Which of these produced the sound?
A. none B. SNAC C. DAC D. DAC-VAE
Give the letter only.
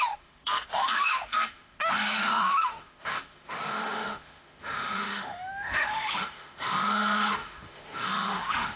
D